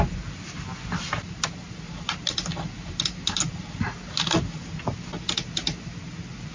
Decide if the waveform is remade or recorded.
recorded